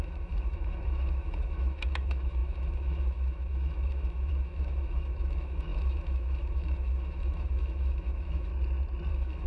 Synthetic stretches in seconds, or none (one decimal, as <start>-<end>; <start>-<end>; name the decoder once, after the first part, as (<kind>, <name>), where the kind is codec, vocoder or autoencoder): 0.0-8.5 (autoencoder, DAC-VAE); 9.1-9.5